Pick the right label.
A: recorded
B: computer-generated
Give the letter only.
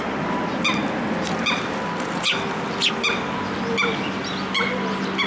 A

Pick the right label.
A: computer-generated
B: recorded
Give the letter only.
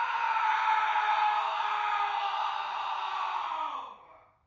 B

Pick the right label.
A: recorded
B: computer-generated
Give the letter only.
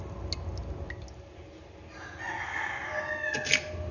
A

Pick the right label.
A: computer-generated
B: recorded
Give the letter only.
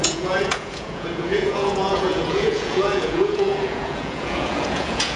A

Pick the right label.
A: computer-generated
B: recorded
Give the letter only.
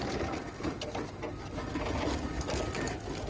B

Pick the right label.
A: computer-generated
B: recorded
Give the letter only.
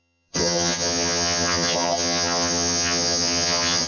A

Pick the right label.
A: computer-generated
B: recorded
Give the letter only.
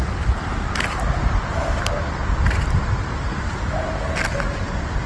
B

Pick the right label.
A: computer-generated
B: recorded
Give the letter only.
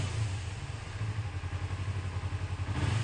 B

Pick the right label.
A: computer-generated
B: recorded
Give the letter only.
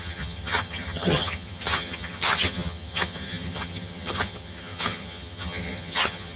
A